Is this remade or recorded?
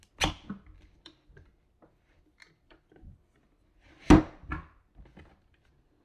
recorded